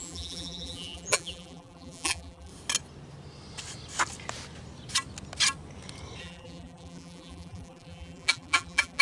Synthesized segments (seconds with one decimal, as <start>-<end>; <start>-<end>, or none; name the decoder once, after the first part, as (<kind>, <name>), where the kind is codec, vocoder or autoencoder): 0.0-2.5 (vocoder, BigVGAN v2); 6.2-9.0